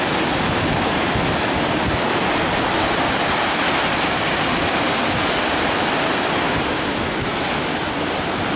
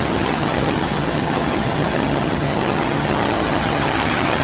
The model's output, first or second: second